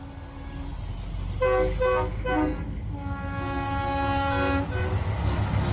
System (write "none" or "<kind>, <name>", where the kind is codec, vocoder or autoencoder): none